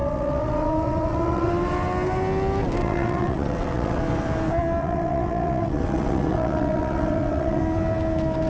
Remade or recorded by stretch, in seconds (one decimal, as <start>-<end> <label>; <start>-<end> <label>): 0.0-1.5 remade; 1.5-2.8 recorded; 2.8-4.0 remade; 4.0-4.8 recorded; 4.8-7.6 remade; 7.6-8.5 recorded